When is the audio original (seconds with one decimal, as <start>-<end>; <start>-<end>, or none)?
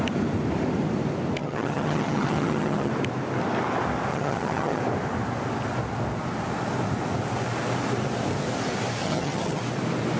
0.0-1.4; 2.9-4.1; 4.8-9.0; 9.6-10.2